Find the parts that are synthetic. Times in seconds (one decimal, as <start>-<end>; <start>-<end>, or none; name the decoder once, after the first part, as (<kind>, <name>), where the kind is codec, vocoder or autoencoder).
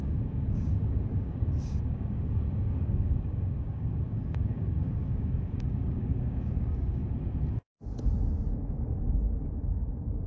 0.0-7.0 (codec, DAC); 9.7-10.3